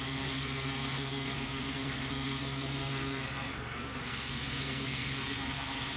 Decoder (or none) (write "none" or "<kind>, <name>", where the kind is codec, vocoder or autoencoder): codec, SNAC